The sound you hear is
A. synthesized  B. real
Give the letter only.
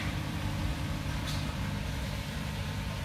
A